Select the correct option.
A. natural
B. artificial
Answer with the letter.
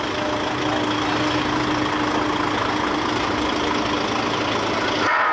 A